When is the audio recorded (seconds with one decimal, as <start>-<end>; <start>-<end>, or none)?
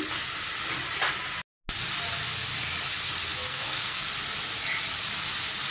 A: 0.0-3.3; 4.1-5.7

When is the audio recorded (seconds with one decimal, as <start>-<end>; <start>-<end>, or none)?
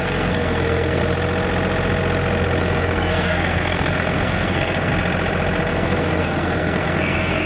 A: 1.0-2.6; 4.9-5.7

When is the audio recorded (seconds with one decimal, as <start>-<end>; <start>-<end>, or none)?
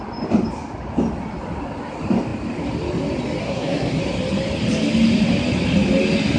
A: 0.0-3.4; 4.0-6.4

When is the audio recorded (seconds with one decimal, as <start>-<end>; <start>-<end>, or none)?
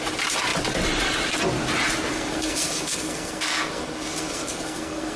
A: 0.0-2.1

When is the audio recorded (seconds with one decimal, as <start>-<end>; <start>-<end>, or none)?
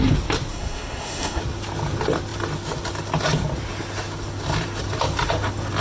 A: 0.0-0.5; 1.4-5.8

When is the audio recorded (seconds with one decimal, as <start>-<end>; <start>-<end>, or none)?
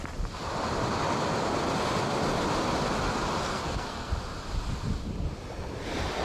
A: 0.0-3.5; 4.1-6.2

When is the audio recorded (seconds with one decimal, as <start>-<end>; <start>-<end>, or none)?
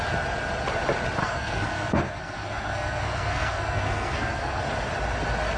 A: 0.0-1.2; 4.6-5.6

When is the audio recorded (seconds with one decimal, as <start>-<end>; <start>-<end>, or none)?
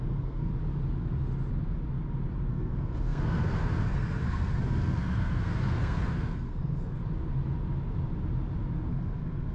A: 0.5-2.5; 7.0-8.9